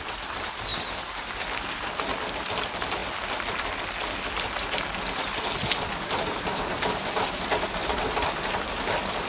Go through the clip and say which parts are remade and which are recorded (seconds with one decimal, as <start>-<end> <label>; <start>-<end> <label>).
0.0-9.3 recorded